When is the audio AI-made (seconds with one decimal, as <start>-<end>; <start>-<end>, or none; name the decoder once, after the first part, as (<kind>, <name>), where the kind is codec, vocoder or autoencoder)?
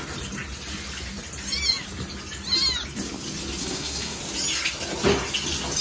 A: 3.6-4.2 (codec, SNAC)